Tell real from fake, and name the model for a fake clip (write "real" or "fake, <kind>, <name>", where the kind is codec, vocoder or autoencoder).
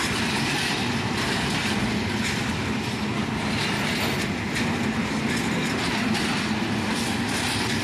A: real